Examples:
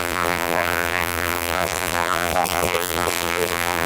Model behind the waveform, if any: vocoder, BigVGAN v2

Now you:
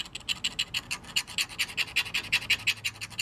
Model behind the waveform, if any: none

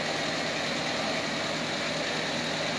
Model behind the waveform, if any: none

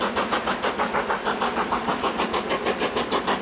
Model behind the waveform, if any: none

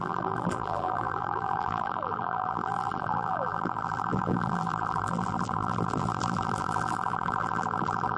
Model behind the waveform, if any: vocoder, BigVGAN v2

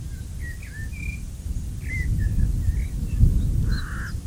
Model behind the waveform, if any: none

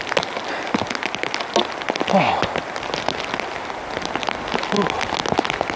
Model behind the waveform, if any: none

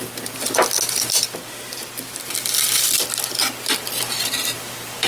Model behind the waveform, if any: none